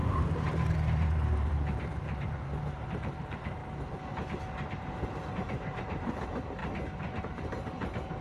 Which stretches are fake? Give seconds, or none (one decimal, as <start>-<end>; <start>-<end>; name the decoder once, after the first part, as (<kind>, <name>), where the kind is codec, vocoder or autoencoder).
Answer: 0.0-3.6 (vocoder, BigVGAN v2); 5.3-6.6; 7.2-8.2